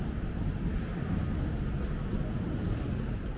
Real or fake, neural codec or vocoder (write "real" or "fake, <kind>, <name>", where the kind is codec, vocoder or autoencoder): real